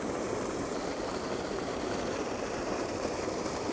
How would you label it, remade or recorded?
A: remade